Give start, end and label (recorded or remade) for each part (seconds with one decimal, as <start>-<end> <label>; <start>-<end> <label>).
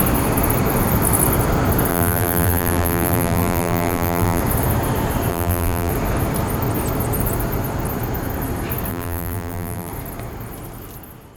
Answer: 0.0-1.9 recorded; 1.9-4.4 remade; 4.4-5.3 recorded; 5.3-5.9 remade; 5.9-8.9 recorded; 8.9-9.9 remade; 9.9-11.4 recorded